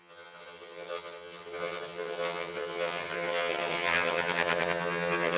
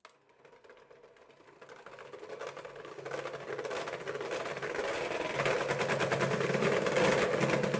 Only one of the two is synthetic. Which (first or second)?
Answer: first